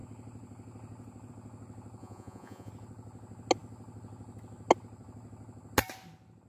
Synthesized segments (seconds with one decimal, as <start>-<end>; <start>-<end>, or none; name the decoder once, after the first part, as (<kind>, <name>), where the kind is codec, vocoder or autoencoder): 2.0-2.7 (vocoder, Vocos)